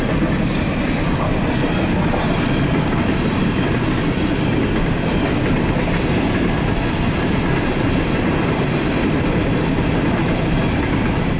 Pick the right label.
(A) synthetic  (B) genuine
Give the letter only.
B